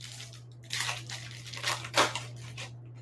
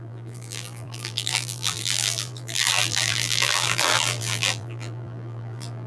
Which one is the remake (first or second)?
second